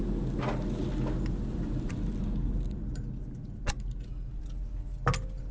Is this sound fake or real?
real